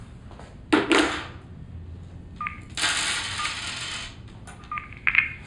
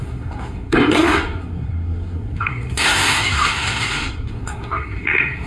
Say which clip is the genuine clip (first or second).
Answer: first